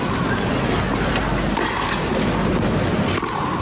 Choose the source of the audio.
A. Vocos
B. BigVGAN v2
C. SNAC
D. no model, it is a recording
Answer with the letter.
D